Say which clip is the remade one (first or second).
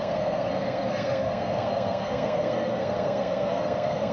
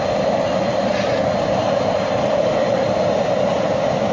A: first